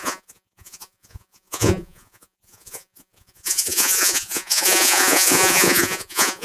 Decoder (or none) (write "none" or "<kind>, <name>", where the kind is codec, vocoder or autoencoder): vocoder, Vocos